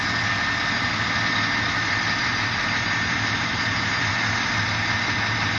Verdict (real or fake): real